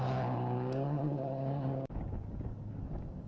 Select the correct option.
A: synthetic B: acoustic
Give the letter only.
A